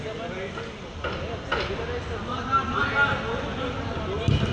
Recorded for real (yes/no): yes